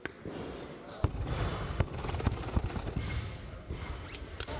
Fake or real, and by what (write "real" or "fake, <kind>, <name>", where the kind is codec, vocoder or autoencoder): real